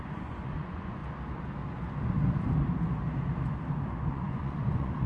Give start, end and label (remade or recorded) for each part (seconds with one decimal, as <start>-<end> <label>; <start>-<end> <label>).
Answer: 0.0-1.0 remade; 1.0-4.1 recorded; 4.1-5.1 remade